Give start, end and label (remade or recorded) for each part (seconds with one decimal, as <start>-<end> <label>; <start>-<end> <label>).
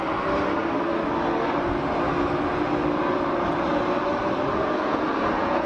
0.0-4.6 recorded; 4.6-5.7 remade